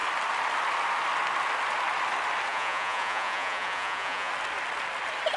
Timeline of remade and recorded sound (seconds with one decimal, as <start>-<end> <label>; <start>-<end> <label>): 0.0-2.5 recorded; 2.5-4.3 remade; 4.3-5.4 recorded